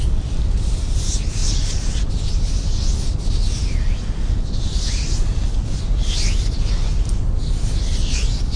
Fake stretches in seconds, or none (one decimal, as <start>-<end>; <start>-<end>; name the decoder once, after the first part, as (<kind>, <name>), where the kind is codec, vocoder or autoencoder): none